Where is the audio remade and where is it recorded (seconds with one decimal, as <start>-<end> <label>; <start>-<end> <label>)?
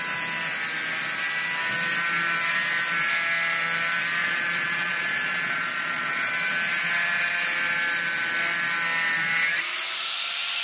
0.0-4.2 recorded; 4.2-6.3 remade; 6.3-10.6 recorded